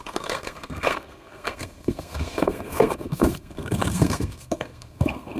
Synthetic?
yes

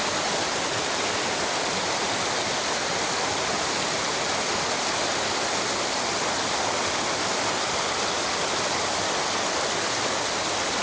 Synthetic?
no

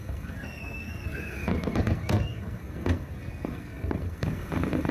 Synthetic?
yes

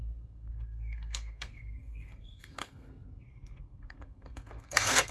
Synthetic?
yes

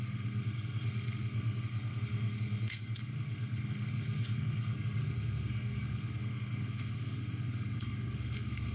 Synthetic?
yes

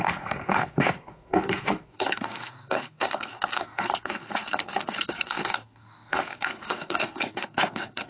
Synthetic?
yes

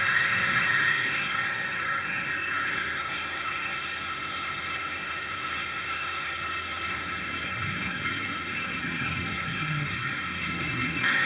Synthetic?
yes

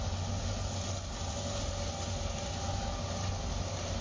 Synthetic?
no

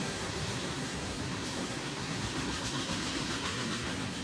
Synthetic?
yes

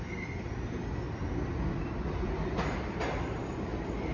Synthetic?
no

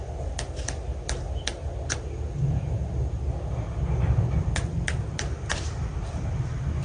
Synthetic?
no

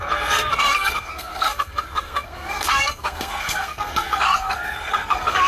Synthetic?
yes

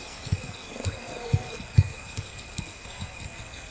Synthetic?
yes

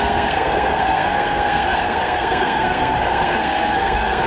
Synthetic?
yes